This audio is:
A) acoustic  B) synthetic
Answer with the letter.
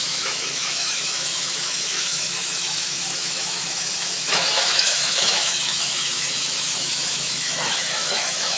B